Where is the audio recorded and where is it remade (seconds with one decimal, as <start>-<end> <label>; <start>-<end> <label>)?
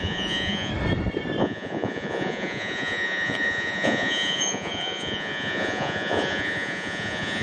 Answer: 0.0-0.7 remade; 0.7-1.4 recorded; 1.4-7.4 remade